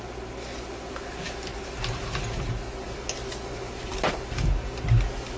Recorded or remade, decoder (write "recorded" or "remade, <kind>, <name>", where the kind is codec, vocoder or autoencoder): recorded